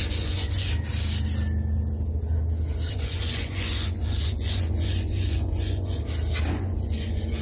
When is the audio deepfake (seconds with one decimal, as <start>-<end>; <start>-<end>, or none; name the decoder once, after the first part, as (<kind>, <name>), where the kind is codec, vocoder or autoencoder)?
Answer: 0.0-0.7 (vocoder, Vocos); 2.9-6.0; 6.5-7.4